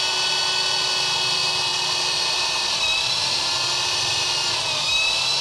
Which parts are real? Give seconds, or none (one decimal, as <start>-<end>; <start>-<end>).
0.0-5.4